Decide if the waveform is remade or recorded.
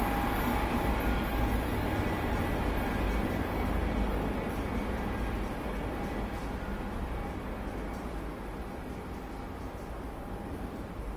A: recorded